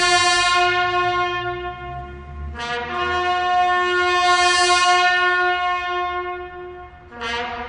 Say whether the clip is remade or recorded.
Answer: recorded